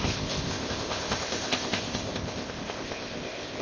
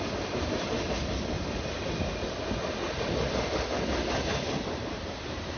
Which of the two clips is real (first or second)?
second